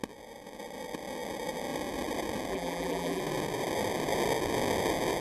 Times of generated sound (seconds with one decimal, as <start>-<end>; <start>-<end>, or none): 2.5-3.2